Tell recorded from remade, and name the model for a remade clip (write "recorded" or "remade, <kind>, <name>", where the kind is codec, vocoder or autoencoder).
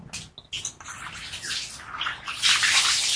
recorded